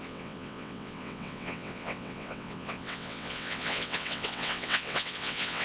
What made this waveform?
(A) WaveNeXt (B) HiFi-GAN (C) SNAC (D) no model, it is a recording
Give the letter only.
A